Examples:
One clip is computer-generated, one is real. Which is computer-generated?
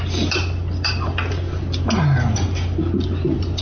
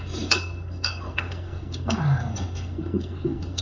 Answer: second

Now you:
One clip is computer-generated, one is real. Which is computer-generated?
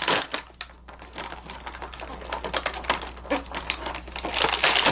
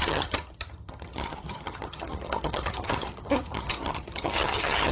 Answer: second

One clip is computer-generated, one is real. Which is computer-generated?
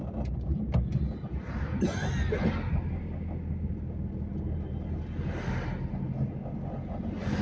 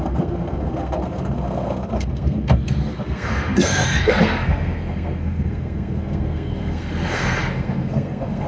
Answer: second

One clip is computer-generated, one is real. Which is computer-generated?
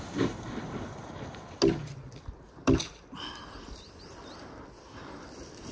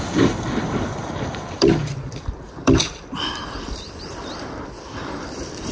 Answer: second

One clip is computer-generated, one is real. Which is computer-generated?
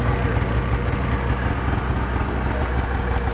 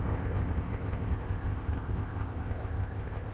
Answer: second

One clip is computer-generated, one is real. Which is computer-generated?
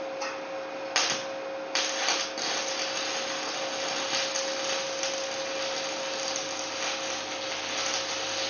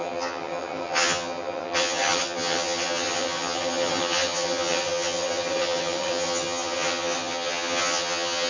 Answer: second